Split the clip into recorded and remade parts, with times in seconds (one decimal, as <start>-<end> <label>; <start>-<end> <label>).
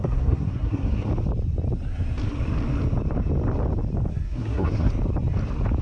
0.0-1.1 remade; 1.1-4.1 recorded; 4.1-4.9 remade; 4.9-5.8 recorded